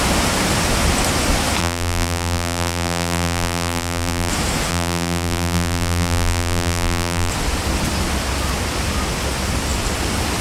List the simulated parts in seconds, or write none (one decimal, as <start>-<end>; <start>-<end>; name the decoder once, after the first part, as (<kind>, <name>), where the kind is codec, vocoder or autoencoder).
1.6-4.3 (vocoder, BigVGAN v2); 4.7-7.3